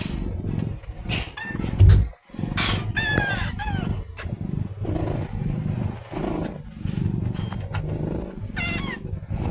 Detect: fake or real real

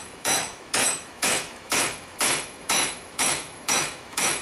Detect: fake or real fake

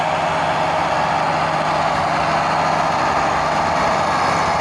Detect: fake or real real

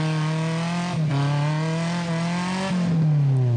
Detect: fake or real real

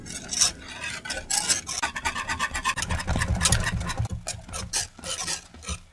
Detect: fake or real real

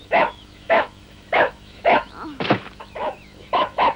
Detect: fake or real fake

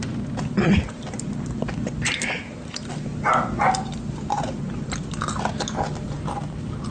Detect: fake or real real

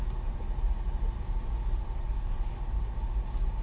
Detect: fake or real real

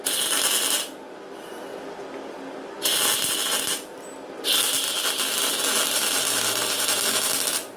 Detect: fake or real real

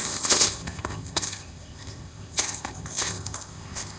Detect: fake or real fake